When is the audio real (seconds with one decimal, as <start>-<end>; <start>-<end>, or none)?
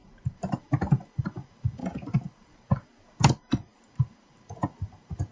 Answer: 0.6-1.8